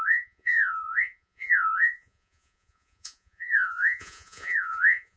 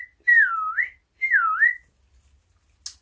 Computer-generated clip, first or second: first